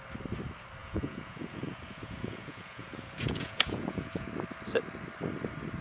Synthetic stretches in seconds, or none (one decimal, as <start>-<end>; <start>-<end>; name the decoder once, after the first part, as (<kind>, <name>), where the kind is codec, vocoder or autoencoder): 0.8-4.3 (vocoder, Vocos)